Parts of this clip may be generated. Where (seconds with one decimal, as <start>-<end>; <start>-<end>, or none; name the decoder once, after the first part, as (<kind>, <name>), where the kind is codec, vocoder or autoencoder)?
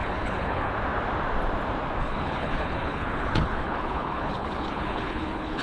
0.0-0.7 (codec, HILCodec); 2.0-5.6